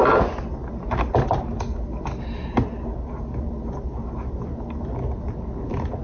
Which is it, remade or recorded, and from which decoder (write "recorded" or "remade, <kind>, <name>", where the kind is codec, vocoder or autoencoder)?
recorded